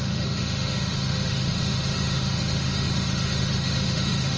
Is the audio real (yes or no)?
no